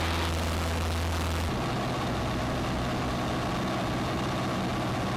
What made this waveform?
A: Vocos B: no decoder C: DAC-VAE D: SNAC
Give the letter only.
B